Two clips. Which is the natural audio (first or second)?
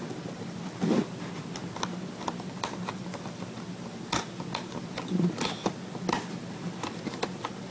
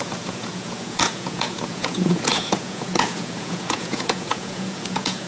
first